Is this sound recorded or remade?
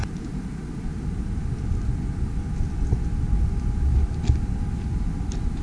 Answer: recorded